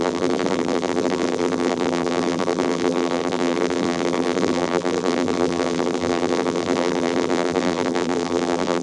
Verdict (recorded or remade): remade